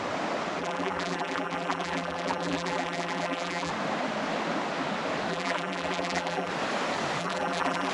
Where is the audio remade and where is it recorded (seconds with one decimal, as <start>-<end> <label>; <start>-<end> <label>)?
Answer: 0.0-0.6 recorded; 0.6-3.7 remade; 3.7-5.3 recorded; 5.3-6.5 remade; 6.5-7.2 recorded; 7.2-7.9 remade